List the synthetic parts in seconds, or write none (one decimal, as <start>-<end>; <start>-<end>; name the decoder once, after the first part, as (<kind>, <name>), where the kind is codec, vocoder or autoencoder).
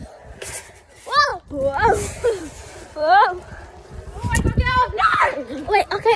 1.3-1.9 (vocoder, BigVGAN v2); 2.6-6.2